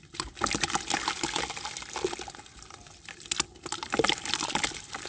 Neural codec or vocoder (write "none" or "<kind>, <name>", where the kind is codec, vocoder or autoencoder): none